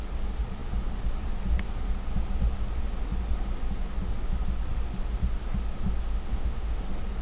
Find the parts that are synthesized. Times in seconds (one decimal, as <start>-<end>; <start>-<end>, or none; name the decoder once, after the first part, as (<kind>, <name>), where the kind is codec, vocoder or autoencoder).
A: 6.1-6.8 (autoencoder, DAC-VAE)